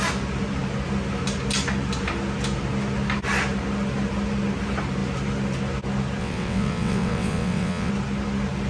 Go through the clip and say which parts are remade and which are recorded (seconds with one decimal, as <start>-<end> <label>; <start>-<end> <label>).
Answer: 0.0-6.2 recorded; 6.2-7.9 remade; 7.9-8.7 recorded